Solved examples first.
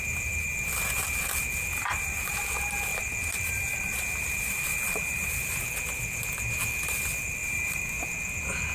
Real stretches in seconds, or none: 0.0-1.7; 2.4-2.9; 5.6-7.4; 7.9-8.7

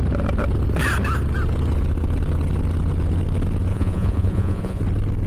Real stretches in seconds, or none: 0.0-3.7; 4.8-5.3

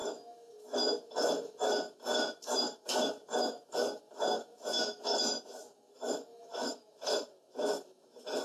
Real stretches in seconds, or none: none

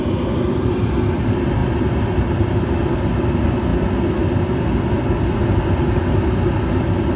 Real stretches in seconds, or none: 0.0-7.2

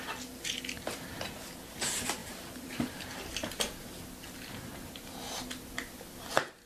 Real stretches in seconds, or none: 0.0-2.2; 3.2-6.7